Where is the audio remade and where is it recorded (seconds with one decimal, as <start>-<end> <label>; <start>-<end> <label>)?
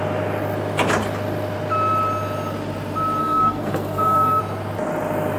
0.0-3.2 recorded; 3.2-4.4 remade; 4.4-5.4 recorded